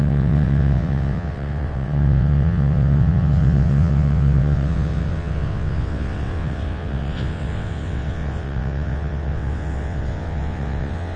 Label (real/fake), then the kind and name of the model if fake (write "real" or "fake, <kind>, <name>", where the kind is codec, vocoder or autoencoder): fake, vocoder, WaveNeXt